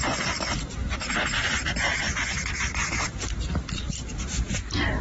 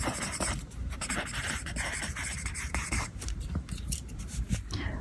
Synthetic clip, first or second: second